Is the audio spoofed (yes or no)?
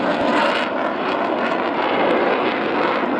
no